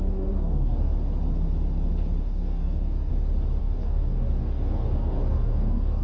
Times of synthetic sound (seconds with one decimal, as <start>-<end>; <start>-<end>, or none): 0.0-0.9; 2.2-3.1; 3.6-6.0